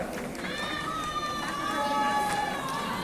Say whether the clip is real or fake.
real